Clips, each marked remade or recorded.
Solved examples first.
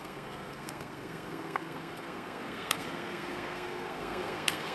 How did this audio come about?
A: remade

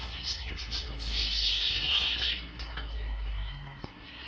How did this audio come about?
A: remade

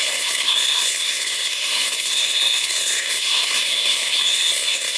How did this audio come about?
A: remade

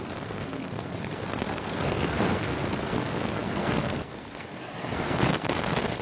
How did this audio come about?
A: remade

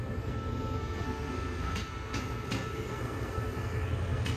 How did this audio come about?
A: remade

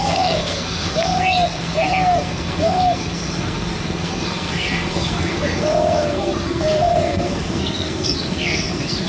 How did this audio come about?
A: remade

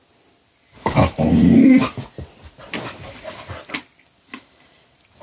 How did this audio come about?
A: recorded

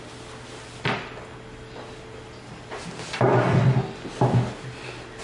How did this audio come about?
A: recorded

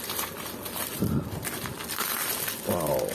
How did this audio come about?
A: recorded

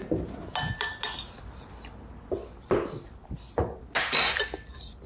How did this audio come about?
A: recorded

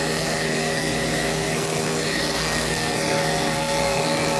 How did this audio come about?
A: remade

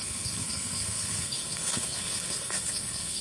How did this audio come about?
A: remade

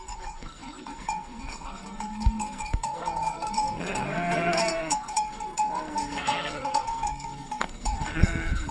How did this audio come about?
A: remade